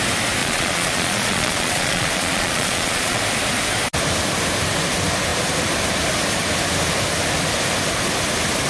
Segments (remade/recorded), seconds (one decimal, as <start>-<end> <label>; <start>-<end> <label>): 0.0-0.4 recorded; 0.4-3.2 remade; 3.2-8.7 recorded